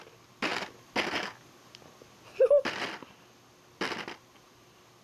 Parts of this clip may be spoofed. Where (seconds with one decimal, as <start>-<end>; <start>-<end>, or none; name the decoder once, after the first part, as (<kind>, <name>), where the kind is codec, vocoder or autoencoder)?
none